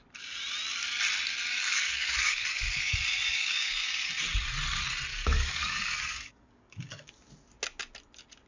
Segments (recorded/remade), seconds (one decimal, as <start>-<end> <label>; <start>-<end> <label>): 0.0-1.5 recorded; 1.5-4.1 remade; 4.1-5.1 recorded; 5.1-7.1 remade; 7.1-8.5 recorded